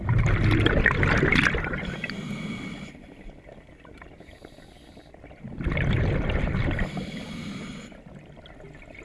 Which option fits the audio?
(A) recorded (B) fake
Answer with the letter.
A